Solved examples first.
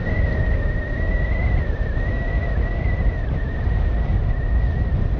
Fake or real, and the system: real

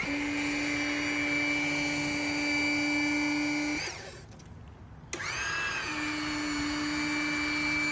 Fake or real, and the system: real